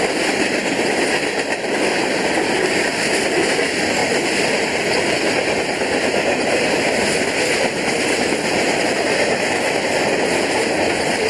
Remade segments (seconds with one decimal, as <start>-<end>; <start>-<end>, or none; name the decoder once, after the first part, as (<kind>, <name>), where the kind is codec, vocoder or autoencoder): none